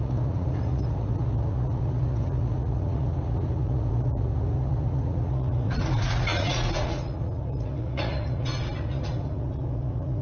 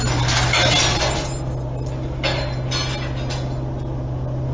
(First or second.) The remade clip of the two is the first